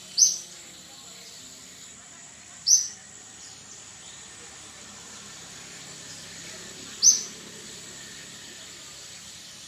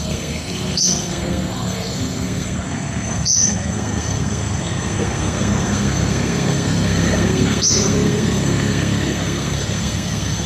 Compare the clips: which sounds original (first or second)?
first